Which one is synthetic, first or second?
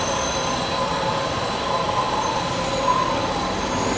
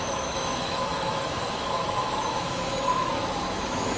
second